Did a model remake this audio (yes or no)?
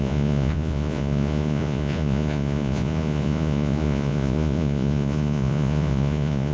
yes